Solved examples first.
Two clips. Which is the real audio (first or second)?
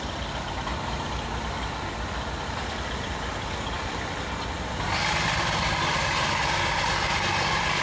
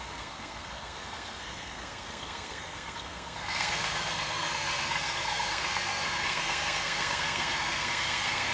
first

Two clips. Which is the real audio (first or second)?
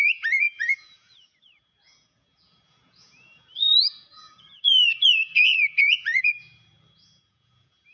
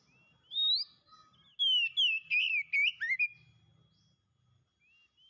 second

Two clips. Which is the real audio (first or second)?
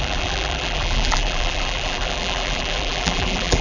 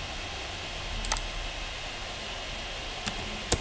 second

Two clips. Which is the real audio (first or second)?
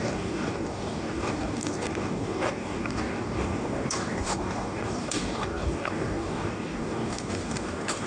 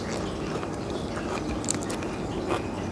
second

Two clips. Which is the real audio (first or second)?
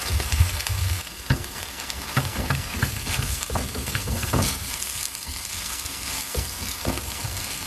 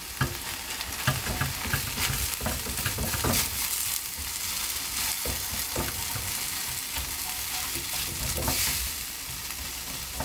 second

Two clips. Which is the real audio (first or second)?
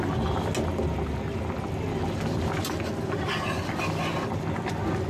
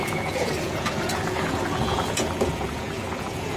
first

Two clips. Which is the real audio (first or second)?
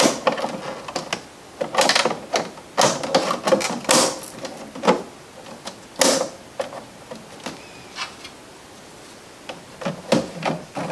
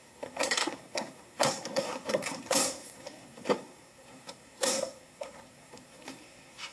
first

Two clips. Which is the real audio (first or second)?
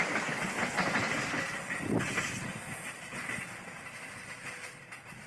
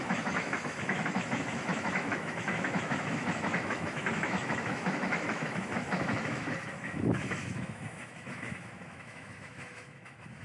first